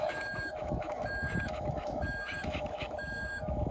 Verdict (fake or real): fake